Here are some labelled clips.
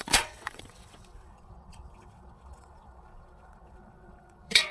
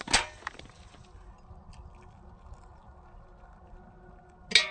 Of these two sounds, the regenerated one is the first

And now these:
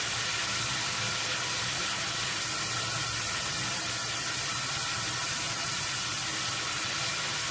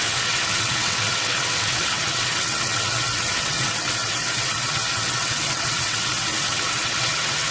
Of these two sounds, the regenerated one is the second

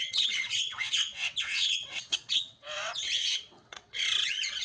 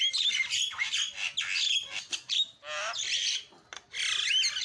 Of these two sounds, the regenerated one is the first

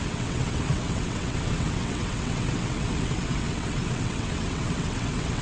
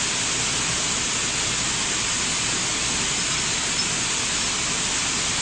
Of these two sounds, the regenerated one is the first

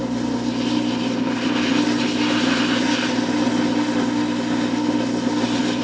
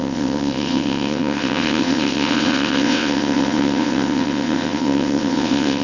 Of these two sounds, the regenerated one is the second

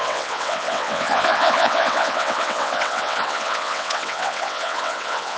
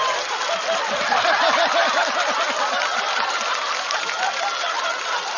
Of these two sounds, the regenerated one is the first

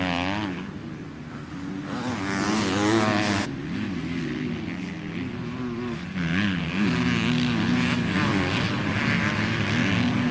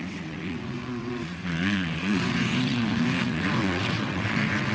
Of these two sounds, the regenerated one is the second